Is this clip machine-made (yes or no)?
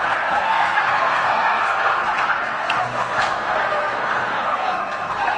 yes